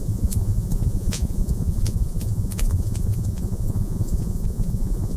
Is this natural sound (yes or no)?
no